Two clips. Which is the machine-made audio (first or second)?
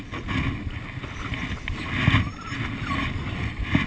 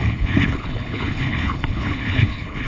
second